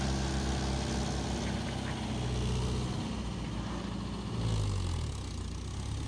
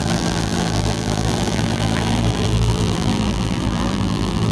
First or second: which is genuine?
first